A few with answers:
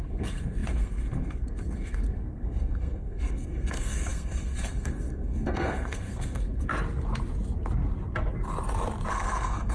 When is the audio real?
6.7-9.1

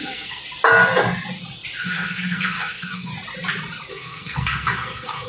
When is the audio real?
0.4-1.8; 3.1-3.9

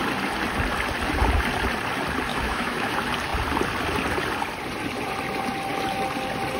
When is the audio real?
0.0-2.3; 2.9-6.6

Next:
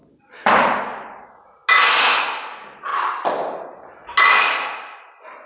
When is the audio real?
0.0-5.5

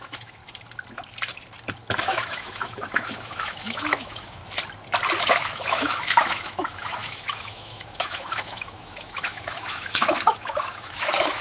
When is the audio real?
0.4-2.0; 4.4-5.2